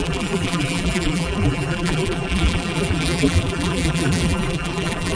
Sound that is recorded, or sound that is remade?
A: remade